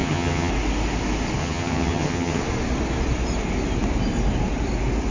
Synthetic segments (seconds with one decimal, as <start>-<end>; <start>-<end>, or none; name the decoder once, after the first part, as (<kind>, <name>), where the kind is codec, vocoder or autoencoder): 0.0-0.5 (vocoder, HiFi-GAN); 1.4-2.4